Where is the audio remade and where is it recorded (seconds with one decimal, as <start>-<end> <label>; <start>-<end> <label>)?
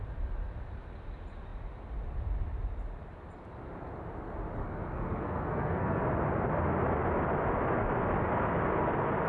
0.0-4.6 recorded; 4.6-6.0 remade; 6.0-9.3 recorded